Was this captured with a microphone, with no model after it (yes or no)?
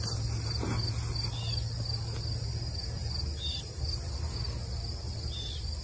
yes